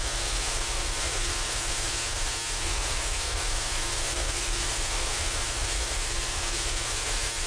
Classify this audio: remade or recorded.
remade